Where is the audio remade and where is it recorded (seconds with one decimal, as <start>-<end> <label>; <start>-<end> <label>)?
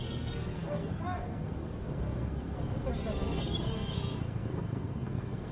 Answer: 0.0-5.5 remade